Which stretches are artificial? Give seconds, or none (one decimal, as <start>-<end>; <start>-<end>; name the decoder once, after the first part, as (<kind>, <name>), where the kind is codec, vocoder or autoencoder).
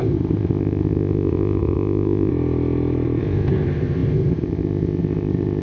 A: 0.0-2.3 (codec, ZipCodec); 3.2-5.6